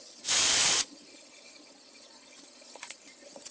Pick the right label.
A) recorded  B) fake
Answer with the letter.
B